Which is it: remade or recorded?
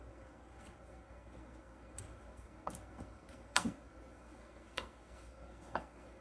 remade